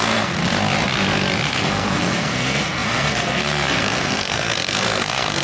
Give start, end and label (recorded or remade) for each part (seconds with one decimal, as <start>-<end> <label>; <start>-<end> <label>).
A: 0.0-0.4 remade; 0.4-1.5 recorded; 1.5-5.4 remade